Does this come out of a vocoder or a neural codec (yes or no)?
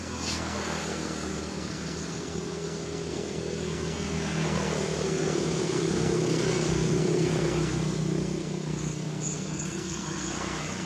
yes